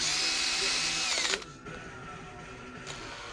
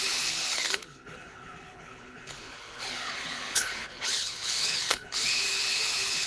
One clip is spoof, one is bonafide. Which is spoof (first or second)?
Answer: second